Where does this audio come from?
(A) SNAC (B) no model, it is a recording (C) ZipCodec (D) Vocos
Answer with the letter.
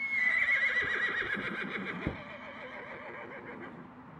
B